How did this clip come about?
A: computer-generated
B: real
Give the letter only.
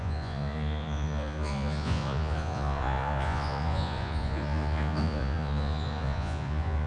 A